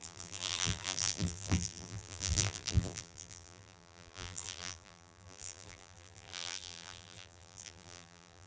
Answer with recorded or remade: remade